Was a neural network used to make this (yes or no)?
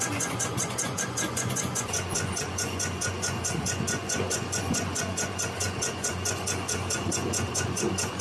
yes